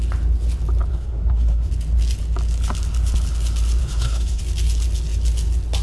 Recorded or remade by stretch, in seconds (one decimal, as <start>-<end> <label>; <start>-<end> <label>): 0.0-0.9 recorded; 0.9-1.7 remade; 1.7-3.8 recorded; 3.8-4.4 remade; 4.4-5.8 recorded